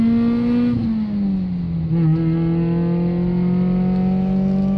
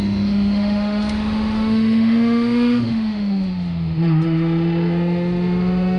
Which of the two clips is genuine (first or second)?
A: first